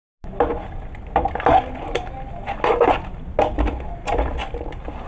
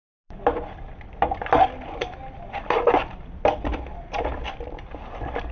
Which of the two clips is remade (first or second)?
second